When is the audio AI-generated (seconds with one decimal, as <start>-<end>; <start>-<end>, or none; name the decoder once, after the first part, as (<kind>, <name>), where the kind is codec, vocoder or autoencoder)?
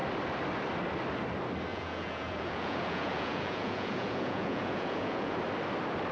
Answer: 1.7-5.4 (vocoder, Vocos)